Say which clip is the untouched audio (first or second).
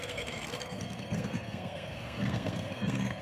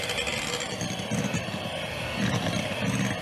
second